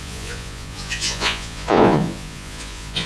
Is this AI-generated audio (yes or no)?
yes